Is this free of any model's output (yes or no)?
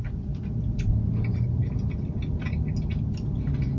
yes